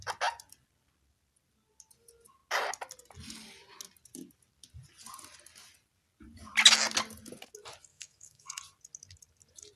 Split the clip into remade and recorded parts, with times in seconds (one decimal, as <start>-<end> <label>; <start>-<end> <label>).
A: 0.0-7.9 recorded; 7.9-8.6 remade; 8.6-9.8 recorded